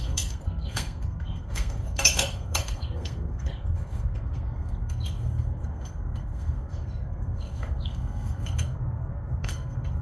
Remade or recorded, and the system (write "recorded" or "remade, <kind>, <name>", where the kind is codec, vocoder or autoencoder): remade, codec, SNAC